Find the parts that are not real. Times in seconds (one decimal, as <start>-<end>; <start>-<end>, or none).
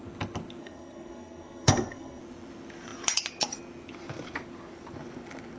0.6-2.2